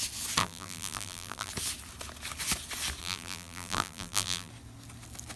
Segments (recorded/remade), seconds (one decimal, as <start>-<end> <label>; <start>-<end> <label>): 0.0-0.4 recorded; 0.4-1.5 remade; 1.5-3.0 recorded; 3.0-4.5 remade; 4.5-5.4 recorded